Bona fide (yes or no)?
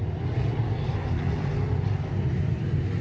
yes